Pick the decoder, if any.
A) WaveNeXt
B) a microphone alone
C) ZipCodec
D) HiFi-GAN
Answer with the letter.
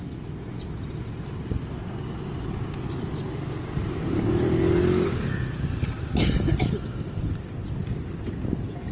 B